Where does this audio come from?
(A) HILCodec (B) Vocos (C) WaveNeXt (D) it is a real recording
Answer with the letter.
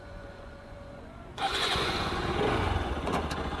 B